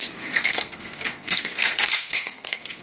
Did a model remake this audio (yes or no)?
yes